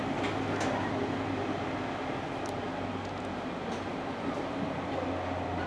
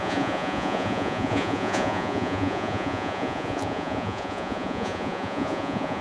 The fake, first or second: second